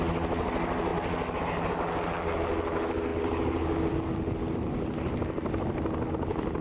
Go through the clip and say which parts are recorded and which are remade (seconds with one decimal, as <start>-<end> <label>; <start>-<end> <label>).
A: 0.0-6.6 recorded